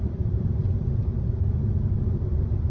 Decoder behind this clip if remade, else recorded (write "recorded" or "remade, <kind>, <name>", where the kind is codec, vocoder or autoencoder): recorded